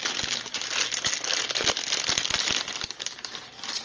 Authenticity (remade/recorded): recorded